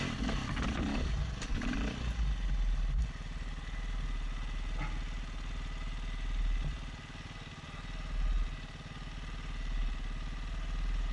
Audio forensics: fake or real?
real